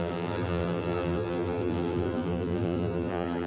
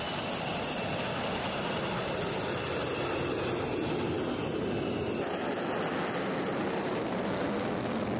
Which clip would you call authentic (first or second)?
second